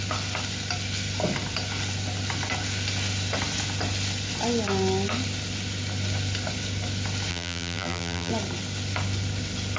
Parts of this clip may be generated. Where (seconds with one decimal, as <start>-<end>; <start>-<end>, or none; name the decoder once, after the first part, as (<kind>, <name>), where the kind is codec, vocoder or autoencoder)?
7.3-8.3 (vocoder, BigVGAN v2)